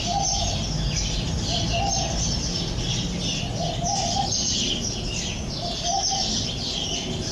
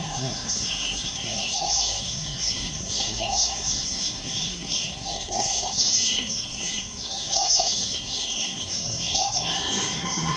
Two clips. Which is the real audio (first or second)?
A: first